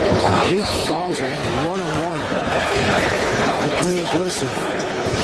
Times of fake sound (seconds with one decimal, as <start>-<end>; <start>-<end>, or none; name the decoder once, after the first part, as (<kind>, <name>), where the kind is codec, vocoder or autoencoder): 0.0-1.4 (codec, HILCodec); 2.1-5.2